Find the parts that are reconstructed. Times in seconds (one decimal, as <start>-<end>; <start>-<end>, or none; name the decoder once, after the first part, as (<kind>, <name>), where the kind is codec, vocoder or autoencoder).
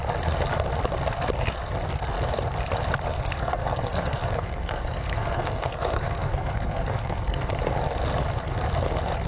3.1-7.5 (codec, SNAC)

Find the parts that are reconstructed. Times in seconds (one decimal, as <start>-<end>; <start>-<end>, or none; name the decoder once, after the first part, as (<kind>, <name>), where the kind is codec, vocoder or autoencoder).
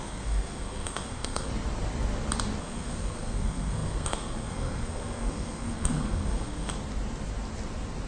0.0-1.5 (codec, SNAC); 2.6-6.7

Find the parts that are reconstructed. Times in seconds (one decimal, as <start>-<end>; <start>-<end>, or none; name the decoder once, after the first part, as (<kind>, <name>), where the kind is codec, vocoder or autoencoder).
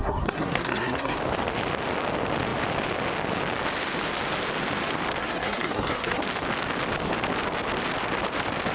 0.0-1.2 (codec, SNAC); 5.2-6.2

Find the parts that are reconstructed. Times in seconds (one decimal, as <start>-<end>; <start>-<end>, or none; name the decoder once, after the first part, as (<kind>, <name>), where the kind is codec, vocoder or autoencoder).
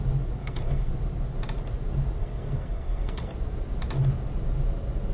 0.4-0.9 (codec, SNAC); 2.2-3.3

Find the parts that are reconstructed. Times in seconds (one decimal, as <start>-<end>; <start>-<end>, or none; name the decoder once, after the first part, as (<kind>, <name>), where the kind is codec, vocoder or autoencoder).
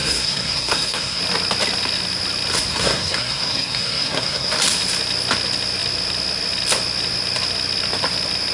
0.0-1.2 (codec, SNAC); 2.7-4.5